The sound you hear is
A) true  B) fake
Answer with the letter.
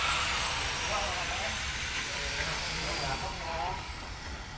B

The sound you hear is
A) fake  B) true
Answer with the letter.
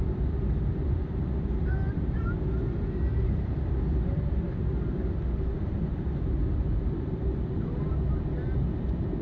A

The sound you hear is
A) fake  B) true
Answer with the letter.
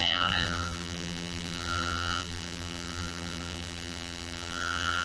A